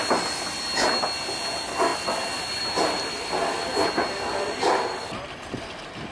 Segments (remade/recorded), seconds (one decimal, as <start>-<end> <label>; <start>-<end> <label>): 0.0-6.1 recorded